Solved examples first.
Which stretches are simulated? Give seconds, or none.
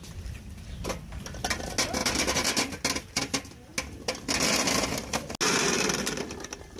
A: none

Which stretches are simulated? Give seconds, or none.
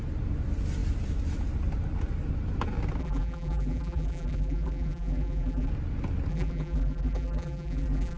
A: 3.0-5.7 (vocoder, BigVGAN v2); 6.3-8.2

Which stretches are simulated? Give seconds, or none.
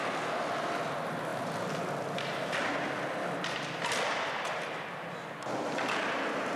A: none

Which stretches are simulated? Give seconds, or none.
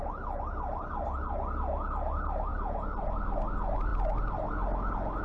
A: none